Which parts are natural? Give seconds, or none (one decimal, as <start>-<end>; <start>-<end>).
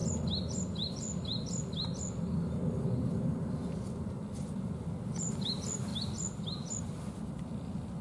0.0-8.0